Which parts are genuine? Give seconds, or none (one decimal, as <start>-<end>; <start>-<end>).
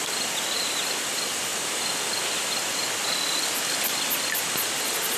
0.0-5.2